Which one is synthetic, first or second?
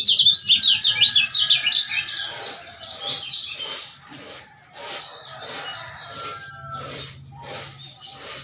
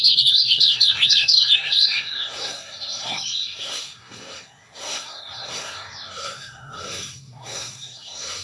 second